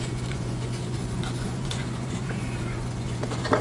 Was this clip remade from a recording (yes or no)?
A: yes